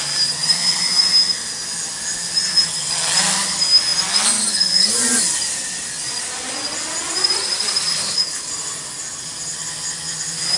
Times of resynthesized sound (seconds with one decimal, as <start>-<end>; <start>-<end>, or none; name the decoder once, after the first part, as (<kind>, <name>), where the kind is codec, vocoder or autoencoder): 7.9-8.5 (codec, HILCodec)